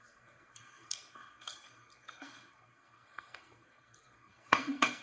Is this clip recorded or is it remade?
remade